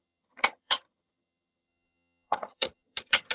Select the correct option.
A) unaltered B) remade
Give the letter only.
B